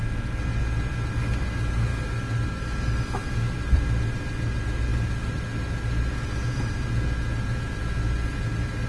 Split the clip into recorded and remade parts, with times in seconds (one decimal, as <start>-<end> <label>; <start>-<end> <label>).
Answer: 0.0-8.9 recorded